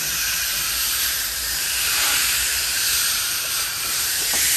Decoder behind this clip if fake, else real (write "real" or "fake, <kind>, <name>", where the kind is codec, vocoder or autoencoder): fake, vocoder, BigVGAN v2